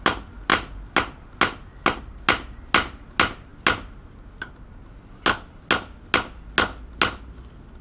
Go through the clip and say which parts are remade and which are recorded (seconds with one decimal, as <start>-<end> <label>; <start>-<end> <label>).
0.0-7.8 recorded